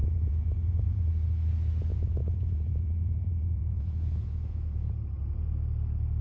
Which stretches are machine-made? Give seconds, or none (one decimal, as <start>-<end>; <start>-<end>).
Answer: 0.0-1.0; 1.9-4.9